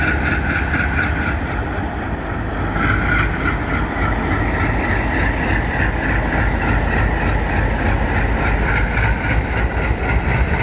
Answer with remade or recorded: recorded